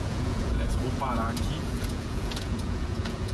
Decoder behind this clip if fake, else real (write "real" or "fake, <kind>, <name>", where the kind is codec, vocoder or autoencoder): fake, vocoder, Vocos